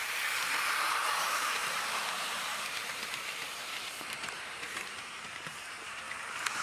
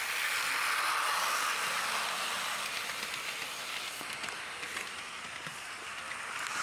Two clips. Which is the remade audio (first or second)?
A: first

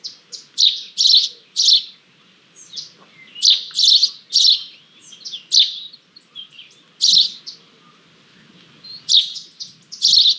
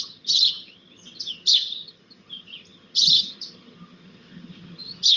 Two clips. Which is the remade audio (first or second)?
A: second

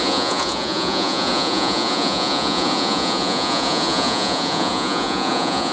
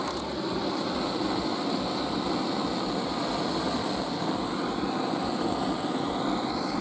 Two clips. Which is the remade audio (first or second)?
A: first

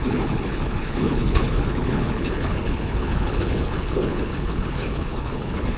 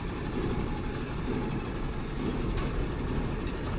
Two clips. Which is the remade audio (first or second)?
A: first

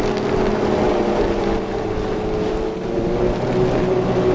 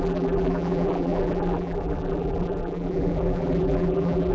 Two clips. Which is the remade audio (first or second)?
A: second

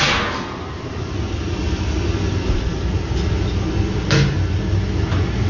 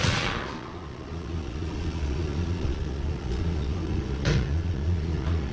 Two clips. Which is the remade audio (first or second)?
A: second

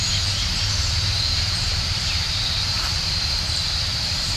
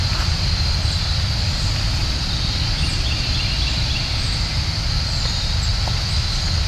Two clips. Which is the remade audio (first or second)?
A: first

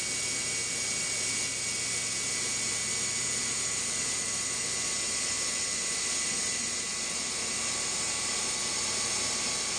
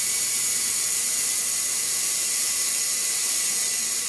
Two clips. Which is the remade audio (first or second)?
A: second